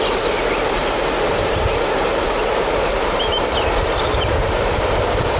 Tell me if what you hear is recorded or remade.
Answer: remade